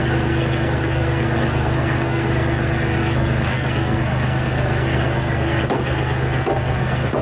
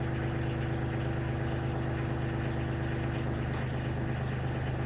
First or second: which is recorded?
second